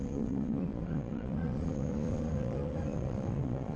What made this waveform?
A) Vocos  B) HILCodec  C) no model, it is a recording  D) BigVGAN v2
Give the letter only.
A